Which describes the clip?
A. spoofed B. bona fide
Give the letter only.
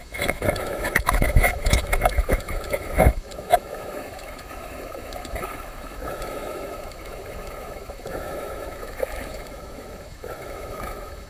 A